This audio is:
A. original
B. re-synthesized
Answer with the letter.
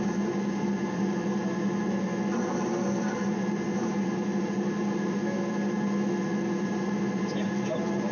A